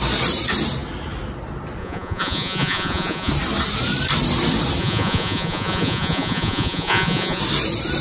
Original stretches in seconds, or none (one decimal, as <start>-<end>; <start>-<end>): 0.0-1.8; 3.3-4.8; 7.4-8.0